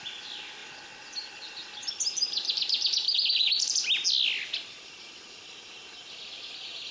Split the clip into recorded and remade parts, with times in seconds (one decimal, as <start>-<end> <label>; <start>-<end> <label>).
0.0-6.9 recorded